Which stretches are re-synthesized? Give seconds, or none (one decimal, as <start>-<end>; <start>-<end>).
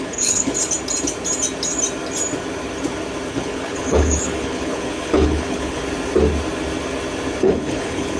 0.0-0.5; 3.3-5.8; 7.4-8.2